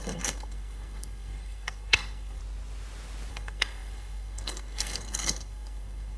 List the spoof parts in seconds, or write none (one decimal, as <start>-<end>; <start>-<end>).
0.0-2.4; 3.3-6.2

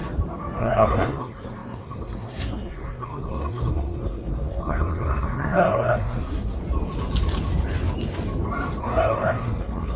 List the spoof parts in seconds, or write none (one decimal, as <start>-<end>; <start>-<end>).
0.6-6.6; 8.8-10.0